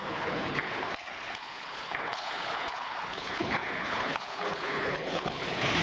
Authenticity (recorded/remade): remade